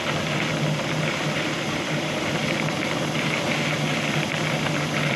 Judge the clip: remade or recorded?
recorded